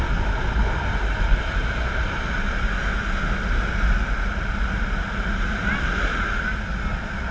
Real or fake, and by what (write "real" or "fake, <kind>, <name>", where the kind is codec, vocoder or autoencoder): real